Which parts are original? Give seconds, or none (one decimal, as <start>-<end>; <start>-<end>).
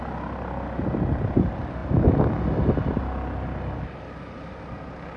0.0-5.2